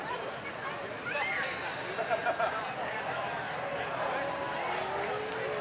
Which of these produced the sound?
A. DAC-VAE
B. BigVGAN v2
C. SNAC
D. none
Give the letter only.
D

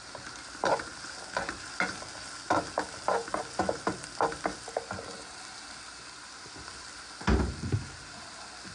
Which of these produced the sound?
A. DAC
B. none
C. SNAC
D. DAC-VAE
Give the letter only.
B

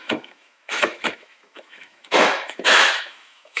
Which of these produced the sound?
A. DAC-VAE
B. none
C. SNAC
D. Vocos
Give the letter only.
A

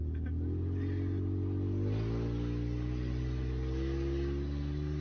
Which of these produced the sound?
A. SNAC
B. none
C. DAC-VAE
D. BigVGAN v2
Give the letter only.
B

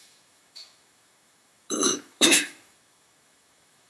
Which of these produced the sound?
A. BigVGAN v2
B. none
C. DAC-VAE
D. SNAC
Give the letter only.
C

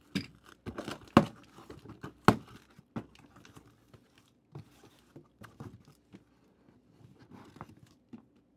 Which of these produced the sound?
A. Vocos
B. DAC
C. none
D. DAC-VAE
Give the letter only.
C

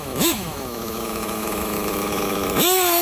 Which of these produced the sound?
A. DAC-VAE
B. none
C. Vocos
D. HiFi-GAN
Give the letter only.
A